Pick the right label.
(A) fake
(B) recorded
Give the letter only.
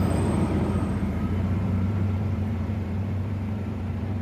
A